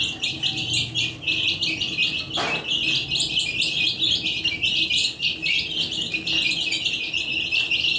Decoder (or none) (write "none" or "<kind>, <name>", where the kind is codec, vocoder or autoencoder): none